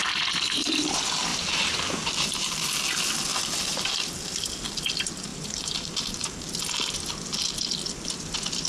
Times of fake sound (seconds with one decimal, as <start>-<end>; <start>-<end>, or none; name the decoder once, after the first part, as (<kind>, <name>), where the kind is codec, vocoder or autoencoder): 1.3-2.5 (vocoder, BigVGAN v2); 3.3-3.9; 5.3-6.5